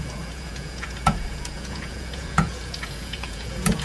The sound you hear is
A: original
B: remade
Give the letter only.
B